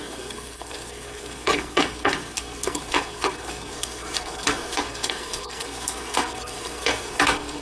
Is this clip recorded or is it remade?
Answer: remade